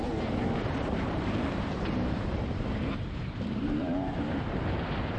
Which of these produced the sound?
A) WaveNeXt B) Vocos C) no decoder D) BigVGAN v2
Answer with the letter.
D